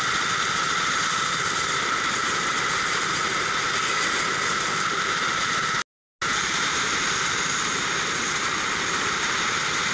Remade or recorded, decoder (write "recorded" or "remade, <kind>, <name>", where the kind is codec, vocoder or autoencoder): recorded